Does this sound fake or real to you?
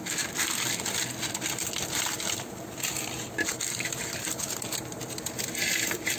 fake